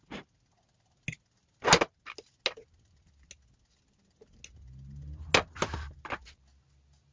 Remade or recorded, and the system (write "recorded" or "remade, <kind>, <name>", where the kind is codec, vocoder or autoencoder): recorded